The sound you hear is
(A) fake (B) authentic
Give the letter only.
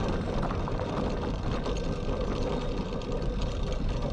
B